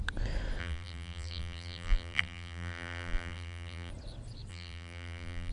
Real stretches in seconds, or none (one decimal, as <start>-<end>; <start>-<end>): 0.0-0.6; 3.9-4.5